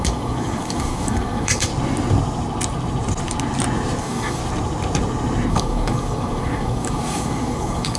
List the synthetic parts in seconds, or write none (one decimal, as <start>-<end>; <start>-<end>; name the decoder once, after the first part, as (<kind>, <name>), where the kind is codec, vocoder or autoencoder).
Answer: 0.0-1.7 (codec, DAC); 4.0-4.4; 5.5-8.0